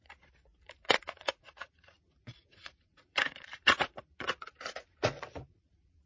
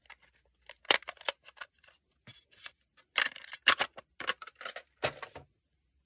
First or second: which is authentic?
second